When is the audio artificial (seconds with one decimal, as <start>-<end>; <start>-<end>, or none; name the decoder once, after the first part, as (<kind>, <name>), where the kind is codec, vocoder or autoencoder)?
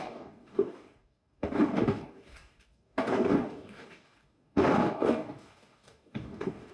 0.0-6.7 (codec, DAC)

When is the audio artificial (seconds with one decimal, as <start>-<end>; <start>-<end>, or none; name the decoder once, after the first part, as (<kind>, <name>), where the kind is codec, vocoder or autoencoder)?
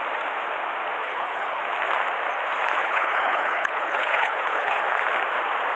1.0-1.6 (codec, HILCodec); 2.8-4.8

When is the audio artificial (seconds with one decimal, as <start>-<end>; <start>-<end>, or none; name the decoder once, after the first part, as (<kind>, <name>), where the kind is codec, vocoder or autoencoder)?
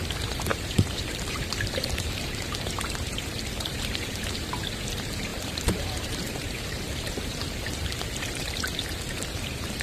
0.0-9.8 (vocoder, BigVGAN v2)